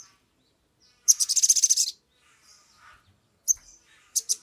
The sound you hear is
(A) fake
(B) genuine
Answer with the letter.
B